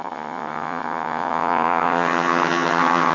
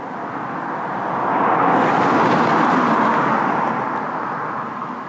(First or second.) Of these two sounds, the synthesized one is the first